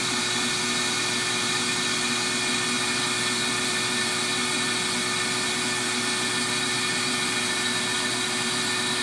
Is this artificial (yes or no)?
no